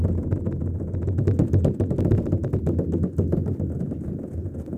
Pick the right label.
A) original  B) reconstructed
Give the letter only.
A